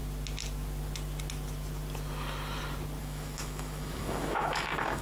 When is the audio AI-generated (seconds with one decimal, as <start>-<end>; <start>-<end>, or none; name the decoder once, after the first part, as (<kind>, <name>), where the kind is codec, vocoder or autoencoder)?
3.0-5.0 (autoencoder, DAC-VAE)